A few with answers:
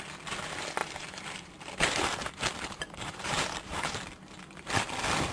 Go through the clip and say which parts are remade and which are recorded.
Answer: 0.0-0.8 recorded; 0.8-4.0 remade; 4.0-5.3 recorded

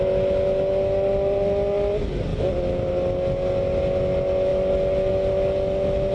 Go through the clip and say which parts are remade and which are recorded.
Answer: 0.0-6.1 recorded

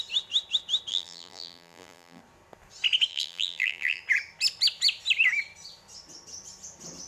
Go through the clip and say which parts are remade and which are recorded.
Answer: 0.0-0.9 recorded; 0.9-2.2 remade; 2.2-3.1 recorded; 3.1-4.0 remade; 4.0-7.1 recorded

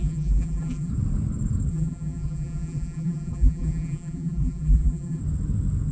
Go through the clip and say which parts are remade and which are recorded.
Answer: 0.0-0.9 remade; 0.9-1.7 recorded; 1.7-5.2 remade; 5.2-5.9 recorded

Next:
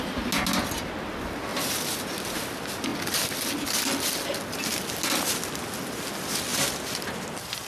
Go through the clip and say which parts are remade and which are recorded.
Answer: 0.0-6.5 recorded; 6.5-7.7 remade

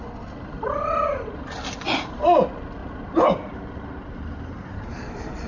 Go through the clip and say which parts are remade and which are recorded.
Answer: 0.0-2.8 recorded; 2.8-5.5 remade

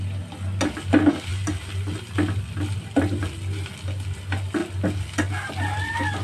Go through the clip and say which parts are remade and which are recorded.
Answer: 0.0-6.2 recorded